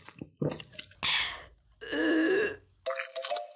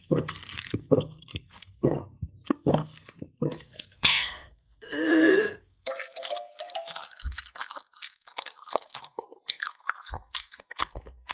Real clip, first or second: first